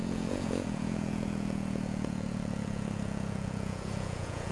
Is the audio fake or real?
fake